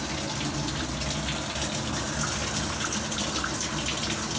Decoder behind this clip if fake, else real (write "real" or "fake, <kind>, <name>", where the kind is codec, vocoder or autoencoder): real